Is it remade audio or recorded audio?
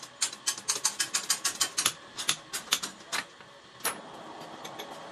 recorded